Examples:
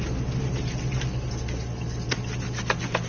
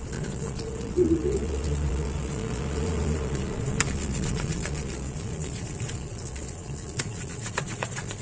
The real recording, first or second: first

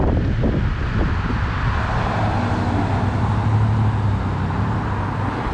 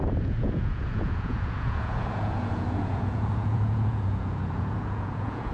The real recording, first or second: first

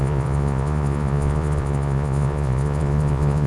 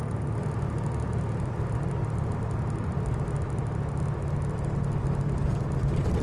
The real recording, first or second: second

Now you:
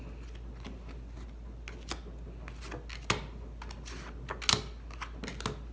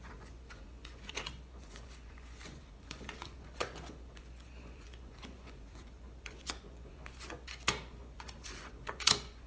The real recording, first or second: first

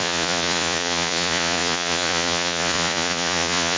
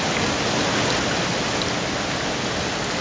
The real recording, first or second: second